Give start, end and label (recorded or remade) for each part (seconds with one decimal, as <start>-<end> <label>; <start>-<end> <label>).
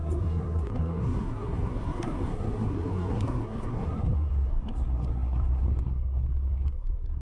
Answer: 0.0-7.2 remade